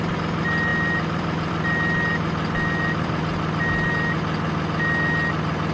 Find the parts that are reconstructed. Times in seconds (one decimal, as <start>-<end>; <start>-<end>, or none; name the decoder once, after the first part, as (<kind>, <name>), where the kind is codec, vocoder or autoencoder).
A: none